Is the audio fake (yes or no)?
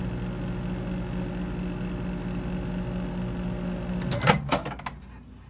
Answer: no